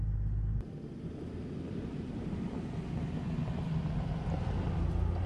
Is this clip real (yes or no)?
yes